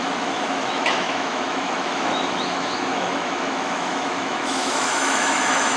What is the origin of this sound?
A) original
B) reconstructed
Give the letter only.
B